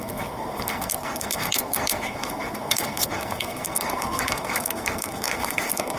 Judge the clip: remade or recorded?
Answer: remade